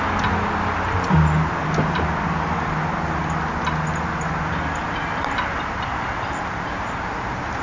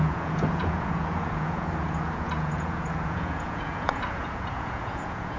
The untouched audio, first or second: first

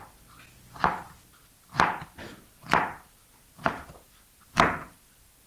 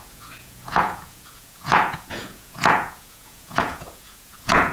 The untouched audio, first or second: first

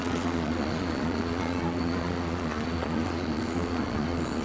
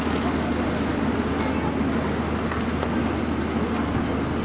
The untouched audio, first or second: second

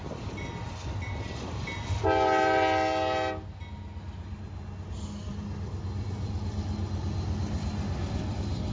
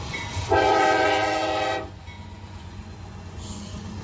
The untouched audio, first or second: first